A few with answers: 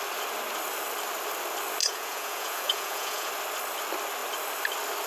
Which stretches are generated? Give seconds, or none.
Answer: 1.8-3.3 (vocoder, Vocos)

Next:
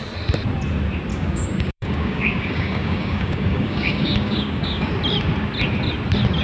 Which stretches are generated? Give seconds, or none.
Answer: 1.1-4.9 (codec, DAC)

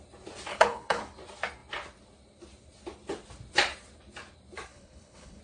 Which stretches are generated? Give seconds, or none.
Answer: 0.5-1.0 (codec, HILCodec); 4.7-5.4

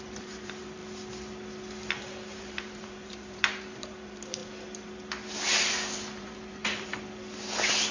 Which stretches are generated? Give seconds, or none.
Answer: 0.0-0.8 (vocoder, BigVGAN v2); 1.9-4.4; 6.2-6.9

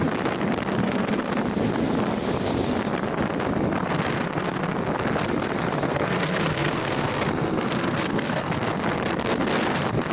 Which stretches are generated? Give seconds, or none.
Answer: 0.8-1.3 (codec, SNAC); 5.9-8.5

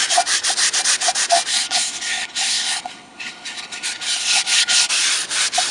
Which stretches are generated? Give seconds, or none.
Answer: 1.5-4.9 (codec, HILCodec)